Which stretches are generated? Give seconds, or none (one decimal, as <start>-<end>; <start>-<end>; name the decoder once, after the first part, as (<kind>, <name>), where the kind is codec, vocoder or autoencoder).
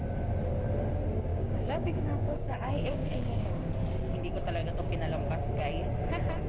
1.3-3.7 (codec, DAC)